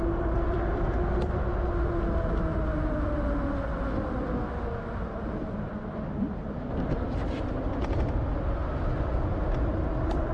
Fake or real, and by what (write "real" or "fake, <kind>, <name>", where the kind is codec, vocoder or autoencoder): real